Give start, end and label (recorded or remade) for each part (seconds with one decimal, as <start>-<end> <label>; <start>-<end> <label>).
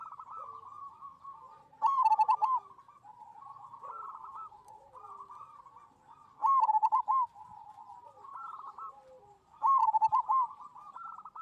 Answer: 0.0-2.4 recorded; 2.4-5.6 remade; 5.6-6.4 recorded; 6.4-8.3 remade; 8.3-9.8 recorded; 9.8-11.4 remade